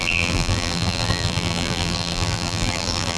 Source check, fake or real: fake